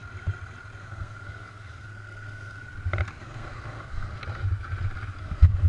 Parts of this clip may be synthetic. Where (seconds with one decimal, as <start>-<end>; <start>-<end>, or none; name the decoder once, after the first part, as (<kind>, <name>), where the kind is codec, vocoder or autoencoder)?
0.8-2.6 (codec, SNAC); 3.2-4.2; 5.2-5.7